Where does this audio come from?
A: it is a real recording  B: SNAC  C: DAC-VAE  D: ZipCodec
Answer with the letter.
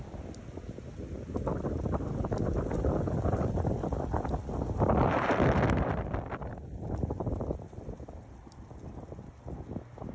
A